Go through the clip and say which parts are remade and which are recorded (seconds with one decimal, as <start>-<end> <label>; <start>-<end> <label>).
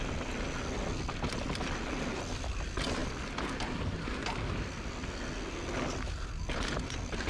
0.0-7.3 recorded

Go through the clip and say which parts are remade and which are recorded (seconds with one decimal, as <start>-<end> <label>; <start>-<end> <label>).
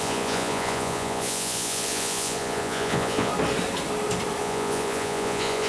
0.0-3.3 remade; 3.3-4.4 recorded; 4.4-5.7 remade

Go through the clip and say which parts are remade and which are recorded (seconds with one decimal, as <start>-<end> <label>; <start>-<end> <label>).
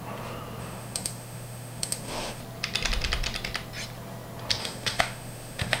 0.0-0.6 recorded; 0.6-2.4 remade; 2.4-4.6 recorded; 4.6-5.8 remade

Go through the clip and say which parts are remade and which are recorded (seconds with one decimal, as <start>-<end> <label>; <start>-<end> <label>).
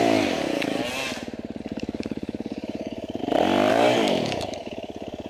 0.0-0.8 remade; 0.8-1.6 recorded; 1.6-3.2 remade; 3.2-3.7 recorded; 3.7-5.3 remade